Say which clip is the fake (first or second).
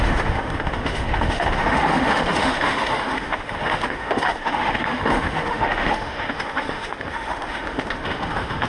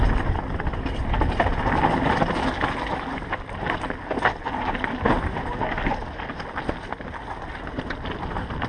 first